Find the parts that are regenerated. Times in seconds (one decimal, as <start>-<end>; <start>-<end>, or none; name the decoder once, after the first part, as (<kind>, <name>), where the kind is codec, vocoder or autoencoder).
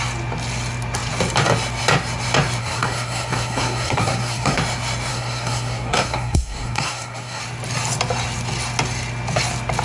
2.6-4.6 (codec, SNAC); 5.1-7.4